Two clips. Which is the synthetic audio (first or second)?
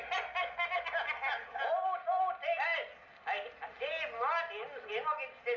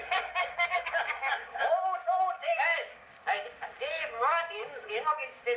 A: second